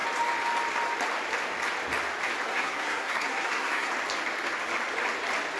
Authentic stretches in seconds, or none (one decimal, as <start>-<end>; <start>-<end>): 0.0-2.5; 3.9-5.6